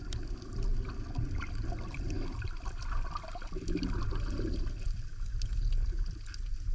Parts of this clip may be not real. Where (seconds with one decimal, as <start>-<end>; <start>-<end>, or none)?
none